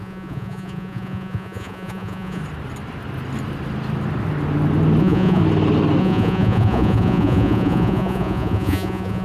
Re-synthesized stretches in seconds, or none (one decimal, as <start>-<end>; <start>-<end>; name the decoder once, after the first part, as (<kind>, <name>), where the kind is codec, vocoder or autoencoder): 0.0-2.4 (vocoder, Vocos); 5.0-5.4; 6.0-9.2